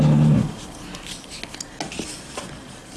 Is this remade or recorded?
recorded